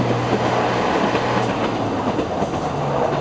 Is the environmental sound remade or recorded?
recorded